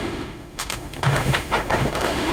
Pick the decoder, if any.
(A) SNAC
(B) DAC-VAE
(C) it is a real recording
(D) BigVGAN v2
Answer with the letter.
B